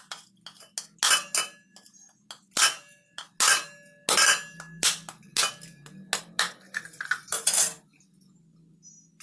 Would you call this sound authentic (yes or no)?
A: yes